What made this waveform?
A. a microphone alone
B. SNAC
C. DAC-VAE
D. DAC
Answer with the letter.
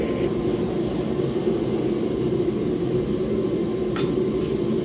A